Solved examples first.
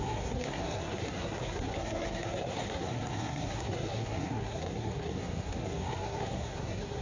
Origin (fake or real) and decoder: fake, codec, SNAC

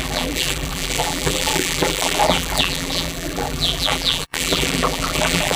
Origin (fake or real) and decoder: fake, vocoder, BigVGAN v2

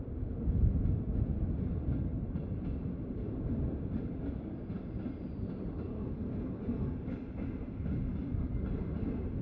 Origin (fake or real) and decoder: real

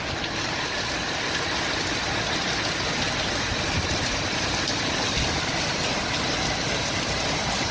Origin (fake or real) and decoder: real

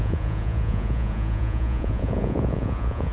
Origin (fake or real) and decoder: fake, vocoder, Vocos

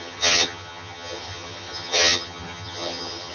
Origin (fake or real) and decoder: fake, vocoder, HiFi-GAN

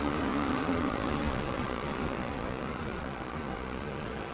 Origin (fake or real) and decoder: fake, vocoder, Vocos